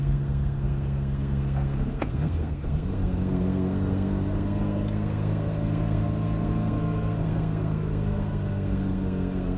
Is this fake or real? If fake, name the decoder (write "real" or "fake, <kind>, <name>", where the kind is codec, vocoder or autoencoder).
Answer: fake, codec, SNAC